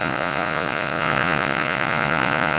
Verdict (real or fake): fake